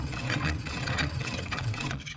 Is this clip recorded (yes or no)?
no